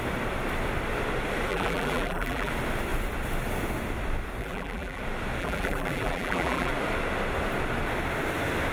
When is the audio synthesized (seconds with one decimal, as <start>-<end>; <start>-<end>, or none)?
1.5-2.5; 4.4-5.0; 5.4-6.7